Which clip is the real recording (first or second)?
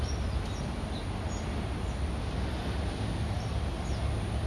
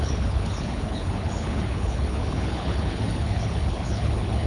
first